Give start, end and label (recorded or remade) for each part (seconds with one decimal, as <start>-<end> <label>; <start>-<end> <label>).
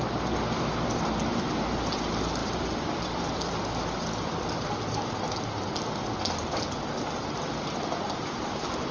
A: 0.0-8.9 recorded